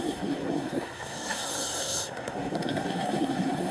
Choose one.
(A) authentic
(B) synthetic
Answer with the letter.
B